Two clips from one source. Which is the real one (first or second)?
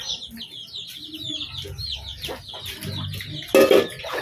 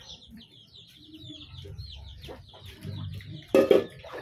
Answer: first